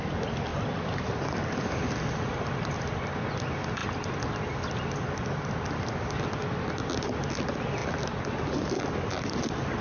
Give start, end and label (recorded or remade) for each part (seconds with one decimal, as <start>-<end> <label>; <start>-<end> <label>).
0.0-0.5 recorded; 0.5-3.4 remade; 3.4-9.8 recorded